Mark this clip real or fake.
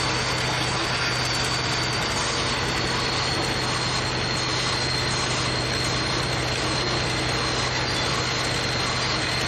real